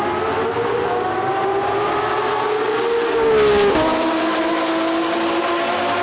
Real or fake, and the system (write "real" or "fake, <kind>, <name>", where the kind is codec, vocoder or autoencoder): real